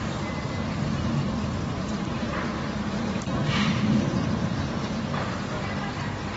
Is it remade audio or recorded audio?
recorded